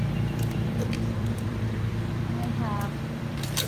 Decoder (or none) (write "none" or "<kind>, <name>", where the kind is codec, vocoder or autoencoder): vocoder, BigVGAN v2